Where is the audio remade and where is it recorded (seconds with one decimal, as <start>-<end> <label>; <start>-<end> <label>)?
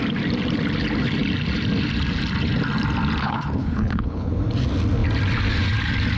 0.0-3.2 recorded; 3.2-4.3 remade; 4.3-6.2 recorded